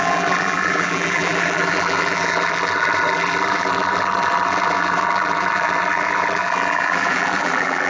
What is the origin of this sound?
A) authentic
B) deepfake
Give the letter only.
B